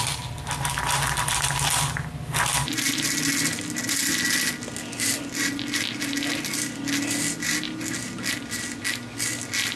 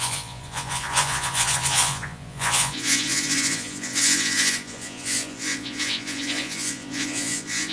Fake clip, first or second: second